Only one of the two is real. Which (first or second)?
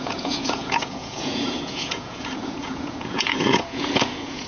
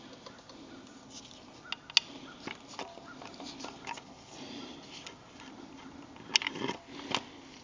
second